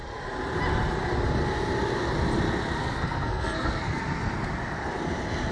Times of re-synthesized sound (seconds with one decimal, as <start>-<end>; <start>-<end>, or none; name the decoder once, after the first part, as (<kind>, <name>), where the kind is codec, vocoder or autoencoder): 2.8-4.0 (codec, SNAC)